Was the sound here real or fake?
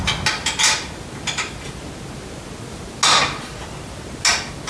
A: real